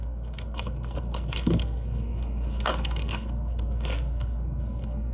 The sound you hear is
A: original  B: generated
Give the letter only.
B